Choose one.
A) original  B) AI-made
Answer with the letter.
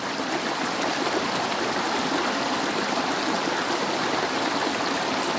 A